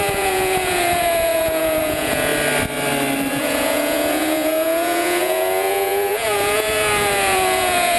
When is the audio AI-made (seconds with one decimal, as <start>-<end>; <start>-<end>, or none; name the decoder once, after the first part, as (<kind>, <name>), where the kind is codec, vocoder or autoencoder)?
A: 0.0-2.3 (vocoder, Vocos); 3.3-8.0